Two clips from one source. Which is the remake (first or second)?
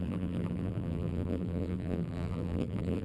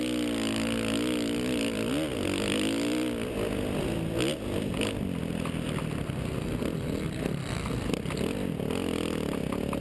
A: first